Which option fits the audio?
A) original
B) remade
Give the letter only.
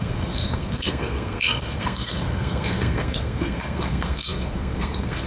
B